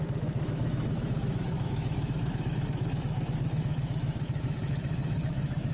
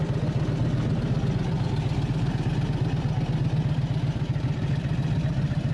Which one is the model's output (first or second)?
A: first